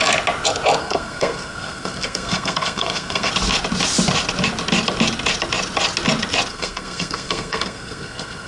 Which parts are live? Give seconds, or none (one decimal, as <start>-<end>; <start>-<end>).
0.0-0.8; 3.3-6.5